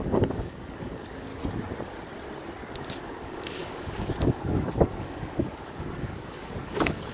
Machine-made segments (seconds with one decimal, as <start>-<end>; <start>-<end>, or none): 0.0-1.3; 2.7-7.1